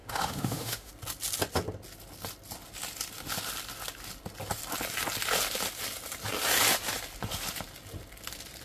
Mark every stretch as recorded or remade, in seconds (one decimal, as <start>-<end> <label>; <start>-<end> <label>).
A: 0.0-0.9 remade; 0.9-8.6 recorded